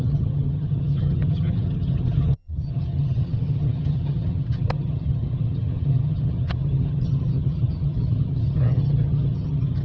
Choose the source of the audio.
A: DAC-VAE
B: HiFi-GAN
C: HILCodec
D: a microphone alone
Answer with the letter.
B